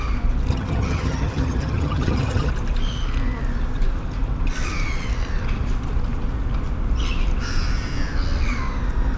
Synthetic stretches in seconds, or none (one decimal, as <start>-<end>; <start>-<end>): 0.5-2.5